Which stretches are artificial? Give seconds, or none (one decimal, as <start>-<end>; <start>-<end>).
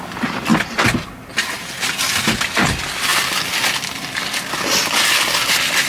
none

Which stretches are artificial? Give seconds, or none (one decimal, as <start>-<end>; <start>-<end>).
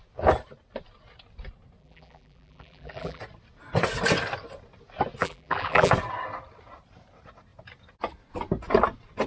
1.8-3.2; 5.2-5.9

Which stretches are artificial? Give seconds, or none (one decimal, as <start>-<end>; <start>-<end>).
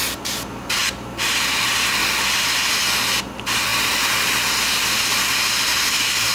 none